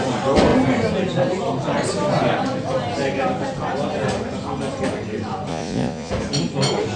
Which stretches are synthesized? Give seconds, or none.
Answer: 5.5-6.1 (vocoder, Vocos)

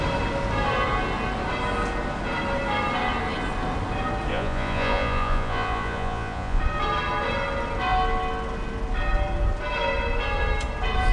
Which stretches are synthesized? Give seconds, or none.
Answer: 4.3-6.6 (vocoder, Vocos)

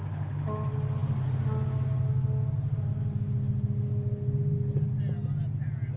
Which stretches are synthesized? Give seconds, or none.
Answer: none

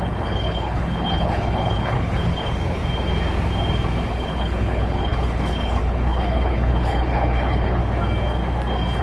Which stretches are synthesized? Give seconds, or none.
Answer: 0.0-2.8 (codec, HILCodec); 4.1-7.8